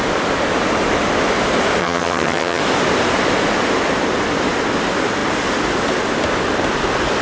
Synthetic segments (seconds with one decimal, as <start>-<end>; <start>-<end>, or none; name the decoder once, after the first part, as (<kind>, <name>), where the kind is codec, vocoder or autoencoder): 1.8-2.6 (vocoder, HiFi-GAN)